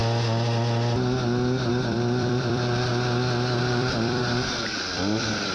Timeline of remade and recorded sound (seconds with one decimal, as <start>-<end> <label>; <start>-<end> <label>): 0.0-1.7 recorded; 1.7-2.9 remade; 2.9-3.6 recorded; 3.6-4.2 remade; 4.2-4.8 recorded; 4.8-5.5 remade